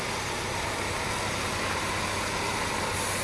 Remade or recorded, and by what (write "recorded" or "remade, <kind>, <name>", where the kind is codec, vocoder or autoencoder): recorded